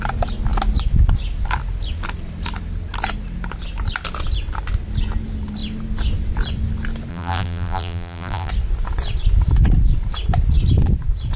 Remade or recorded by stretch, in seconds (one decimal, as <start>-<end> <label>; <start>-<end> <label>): 0.0-7.1 recorded; 7.1-8.5 remade; 8.5-11.4 recorded